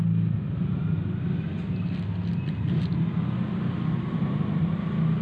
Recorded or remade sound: recorded